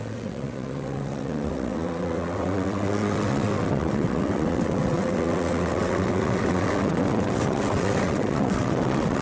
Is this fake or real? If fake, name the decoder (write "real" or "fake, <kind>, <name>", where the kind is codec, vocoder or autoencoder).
fake, vocoder, WaveNeXt